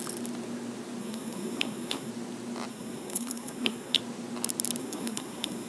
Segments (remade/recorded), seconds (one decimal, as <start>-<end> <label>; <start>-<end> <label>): 0.0-1.0 recorded; 1.0-2.1 remade; 2.1-2.7 recorded; 2.7-4.0 remade; 4.0-4.8 recorded; 4.8-5.7 remade